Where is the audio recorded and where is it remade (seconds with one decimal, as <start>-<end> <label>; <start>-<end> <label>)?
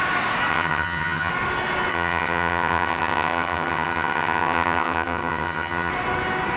0.0-0.5 recorded; 0.5-1.3 remade; 1.3-1.9 recorded; 1.9-5.9 remade; 5.9-6.6 recorded